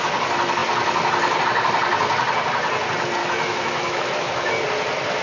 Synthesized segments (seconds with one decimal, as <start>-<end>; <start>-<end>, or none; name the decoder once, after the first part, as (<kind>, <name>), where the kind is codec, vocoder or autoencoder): 3.2-4.5 (autoencoder, DAC-VAE)